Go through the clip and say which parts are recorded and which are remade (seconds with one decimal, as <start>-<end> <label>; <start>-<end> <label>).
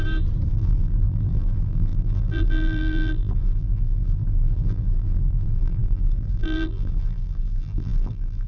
0.0-0.5 recorded; 0.5-8.5 remade